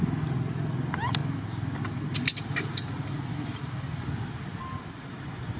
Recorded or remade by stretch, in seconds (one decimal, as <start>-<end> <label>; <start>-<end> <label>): 0.0-5.6 recorded